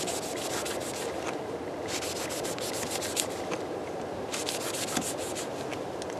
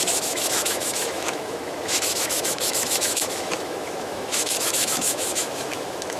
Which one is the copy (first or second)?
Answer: second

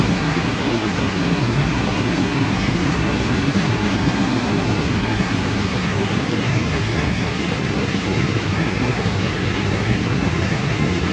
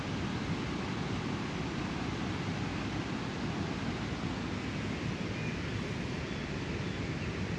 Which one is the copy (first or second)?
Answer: first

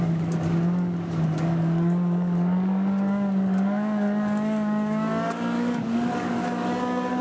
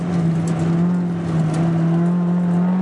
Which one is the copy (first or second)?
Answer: first